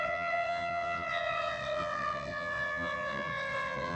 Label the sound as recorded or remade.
remade